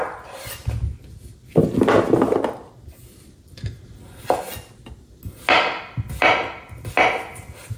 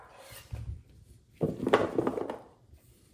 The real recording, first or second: first